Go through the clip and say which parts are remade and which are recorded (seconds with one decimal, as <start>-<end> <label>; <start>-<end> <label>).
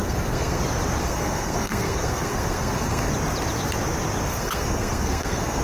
0.0-0.6 remade; 0.6-1.0 recorded; 1.0-3.1 remade; 3.1-4.3 recorded; 4.3-5.6 remade